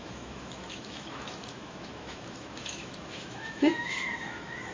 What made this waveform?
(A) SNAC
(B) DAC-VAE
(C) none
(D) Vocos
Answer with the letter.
B